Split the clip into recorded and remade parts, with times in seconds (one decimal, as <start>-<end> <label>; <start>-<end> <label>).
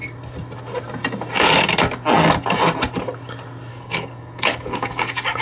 0.0-3.7 recorded; 3.7-5.4 remade